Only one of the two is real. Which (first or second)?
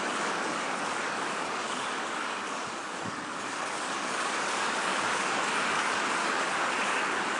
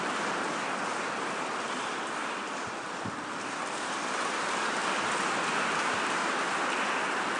second